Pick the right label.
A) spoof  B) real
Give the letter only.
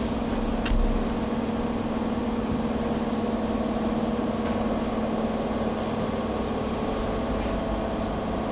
B